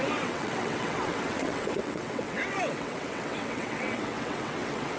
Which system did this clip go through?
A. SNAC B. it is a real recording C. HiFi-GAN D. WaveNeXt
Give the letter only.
D